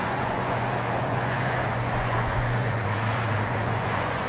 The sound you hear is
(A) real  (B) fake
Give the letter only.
B